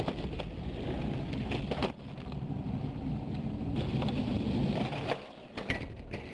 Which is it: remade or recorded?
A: recorded